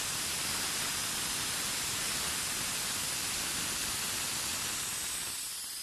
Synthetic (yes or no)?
no